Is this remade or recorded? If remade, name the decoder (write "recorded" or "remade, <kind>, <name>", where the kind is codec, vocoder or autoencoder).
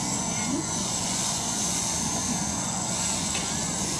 remade, vocoder, Vocos